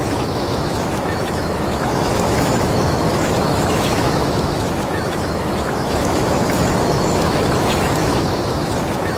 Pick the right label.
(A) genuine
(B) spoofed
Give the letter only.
B